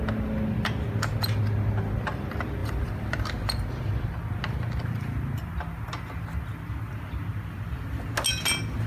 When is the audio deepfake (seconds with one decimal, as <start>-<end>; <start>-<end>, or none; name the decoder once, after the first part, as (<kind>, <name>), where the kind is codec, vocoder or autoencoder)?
2.6-3.2 (vocoder, BigVGAN v2)